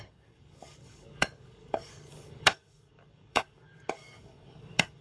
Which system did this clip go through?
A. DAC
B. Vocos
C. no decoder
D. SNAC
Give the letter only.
A